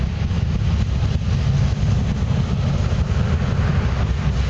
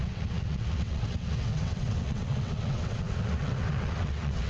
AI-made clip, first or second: second